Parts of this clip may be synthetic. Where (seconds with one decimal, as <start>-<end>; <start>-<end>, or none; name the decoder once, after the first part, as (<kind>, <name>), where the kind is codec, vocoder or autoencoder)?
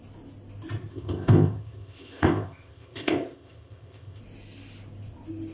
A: 0.9-4.2 (codec, ZipCodec)